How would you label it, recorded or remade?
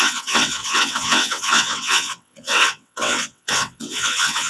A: remade